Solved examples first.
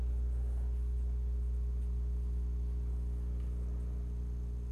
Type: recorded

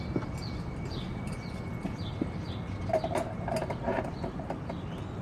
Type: recorded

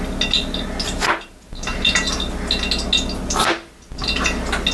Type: recorded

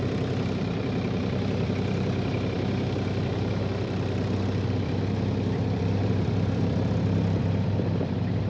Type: remade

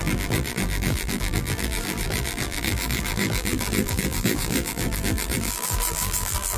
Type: remade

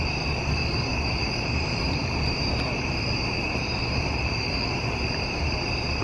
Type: remade